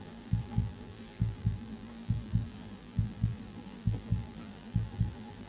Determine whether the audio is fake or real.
fake